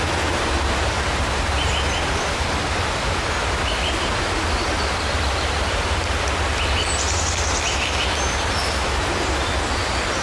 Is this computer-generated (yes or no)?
no